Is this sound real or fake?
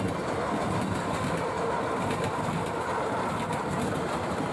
real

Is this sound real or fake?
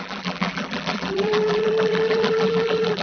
fake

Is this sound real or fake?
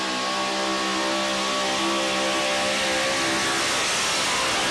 real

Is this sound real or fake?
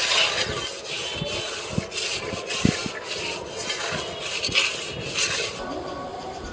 real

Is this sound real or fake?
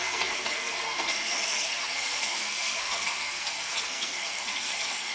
fake